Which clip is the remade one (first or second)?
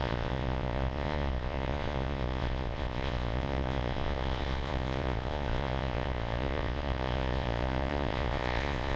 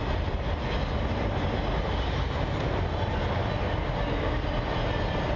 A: first